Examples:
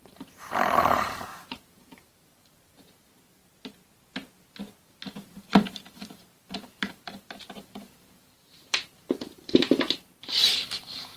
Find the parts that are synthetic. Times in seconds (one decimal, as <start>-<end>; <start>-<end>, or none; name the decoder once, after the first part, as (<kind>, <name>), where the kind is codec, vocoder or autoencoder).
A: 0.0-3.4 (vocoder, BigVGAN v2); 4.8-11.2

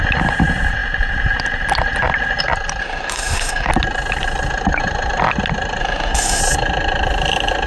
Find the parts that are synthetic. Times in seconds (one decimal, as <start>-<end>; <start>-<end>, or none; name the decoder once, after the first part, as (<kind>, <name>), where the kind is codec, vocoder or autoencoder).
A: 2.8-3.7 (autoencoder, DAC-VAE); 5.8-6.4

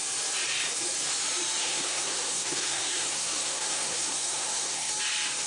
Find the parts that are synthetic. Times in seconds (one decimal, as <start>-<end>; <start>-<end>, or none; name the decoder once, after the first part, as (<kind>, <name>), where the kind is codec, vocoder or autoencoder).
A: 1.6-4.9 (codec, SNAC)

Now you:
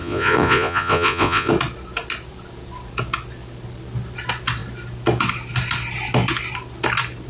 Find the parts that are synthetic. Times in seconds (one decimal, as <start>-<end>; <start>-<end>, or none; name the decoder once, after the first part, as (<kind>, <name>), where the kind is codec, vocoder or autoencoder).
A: 0.0-1.5 (vocoder, Vocos)

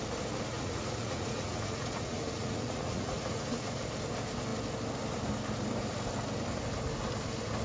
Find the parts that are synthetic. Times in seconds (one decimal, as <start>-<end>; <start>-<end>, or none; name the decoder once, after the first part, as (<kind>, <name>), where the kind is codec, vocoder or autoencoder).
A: 0.5-3.8 (vocoder, Vocos)

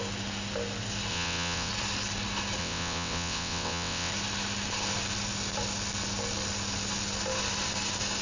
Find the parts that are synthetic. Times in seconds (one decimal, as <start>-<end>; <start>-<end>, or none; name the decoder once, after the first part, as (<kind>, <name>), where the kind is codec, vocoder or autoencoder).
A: 1.1-1.7 (vocoder, WaveNeXt); 2.6-4.1

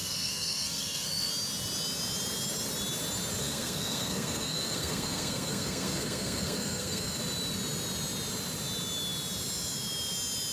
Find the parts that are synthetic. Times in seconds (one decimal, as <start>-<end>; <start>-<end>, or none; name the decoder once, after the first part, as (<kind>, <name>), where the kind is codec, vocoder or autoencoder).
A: 0.0-1.3 (codec, SNAC); 3.4-7.2